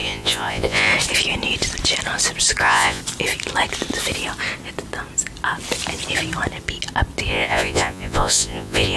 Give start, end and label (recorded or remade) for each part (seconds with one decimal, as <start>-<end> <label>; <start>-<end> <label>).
0.0-0.9 remade; 0.9-2.6 recorded; 2.6-3.0 remade; 3.0-7.3 recorded; 7.3-9.0 remade